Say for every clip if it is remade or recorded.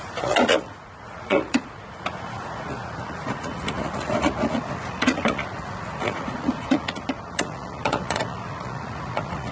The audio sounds remade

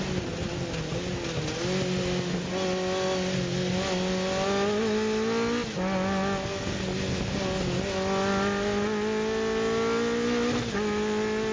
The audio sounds recorded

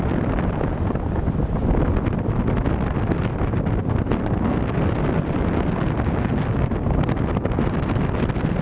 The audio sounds recorded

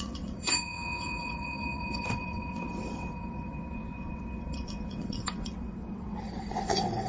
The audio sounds remade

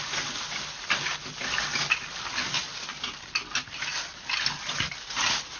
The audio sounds recorded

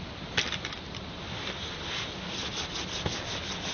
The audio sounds recorded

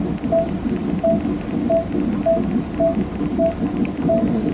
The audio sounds recorded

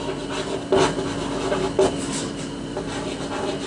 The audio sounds recorded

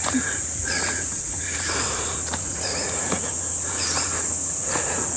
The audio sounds remade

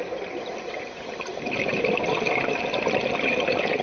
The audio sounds recorded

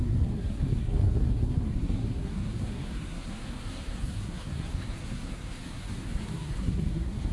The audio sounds remade